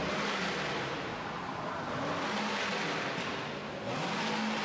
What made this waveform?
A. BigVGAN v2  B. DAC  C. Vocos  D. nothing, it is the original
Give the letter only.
D